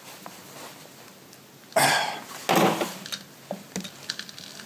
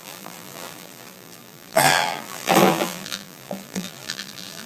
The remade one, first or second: second